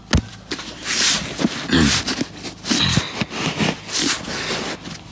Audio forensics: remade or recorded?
recorded